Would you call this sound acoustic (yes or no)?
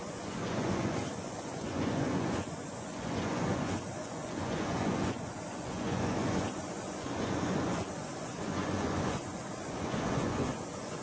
no